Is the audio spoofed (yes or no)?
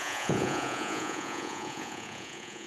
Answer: yes